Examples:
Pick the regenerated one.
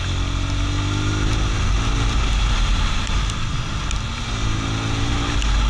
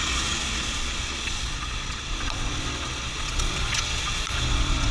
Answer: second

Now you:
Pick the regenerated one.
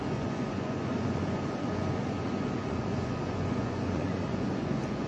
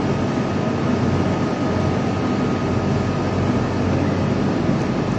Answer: first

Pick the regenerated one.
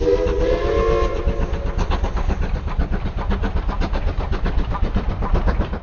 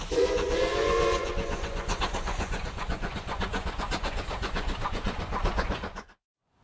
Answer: second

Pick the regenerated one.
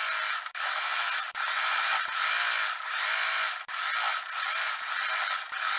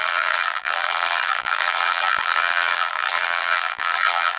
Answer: second